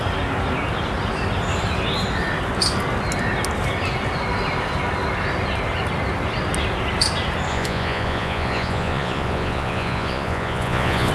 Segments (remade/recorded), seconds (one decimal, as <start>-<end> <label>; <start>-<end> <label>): 0.0-7.5 recorded; 7.5-11.1 remade